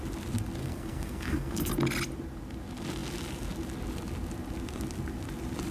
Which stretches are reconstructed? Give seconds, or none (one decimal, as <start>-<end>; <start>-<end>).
0.6-1.7